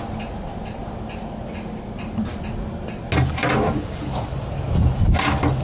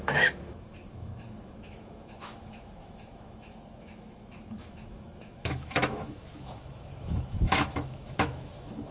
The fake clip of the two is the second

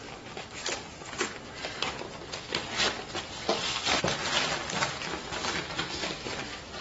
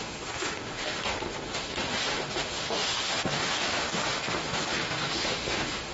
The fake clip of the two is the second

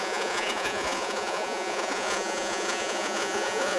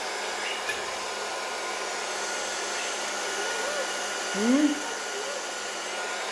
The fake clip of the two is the first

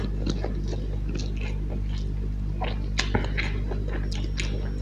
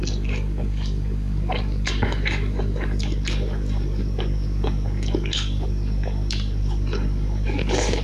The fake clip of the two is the second